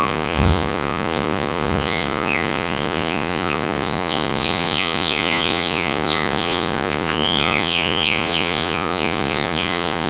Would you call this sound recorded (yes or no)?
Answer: no